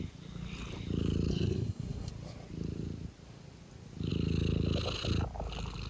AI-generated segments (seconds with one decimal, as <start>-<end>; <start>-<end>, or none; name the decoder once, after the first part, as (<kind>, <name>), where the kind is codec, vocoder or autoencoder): 1.3-2.1 (codec, SNAC)